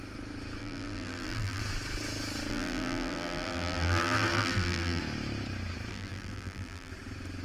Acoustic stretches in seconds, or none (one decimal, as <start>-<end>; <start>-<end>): 0.0-0.6; 1.6-2.5; 5.0-5.9; 6.9-7.4